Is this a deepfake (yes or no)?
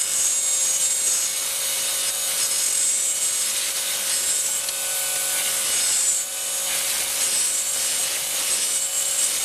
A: no